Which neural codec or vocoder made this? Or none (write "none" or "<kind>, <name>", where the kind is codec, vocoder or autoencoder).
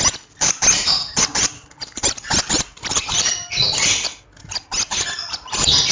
none